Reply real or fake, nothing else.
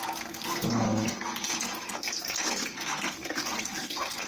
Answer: fake